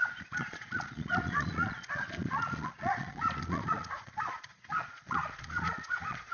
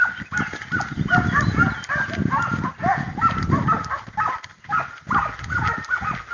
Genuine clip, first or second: second